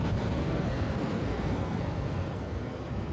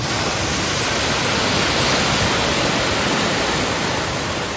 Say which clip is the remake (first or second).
first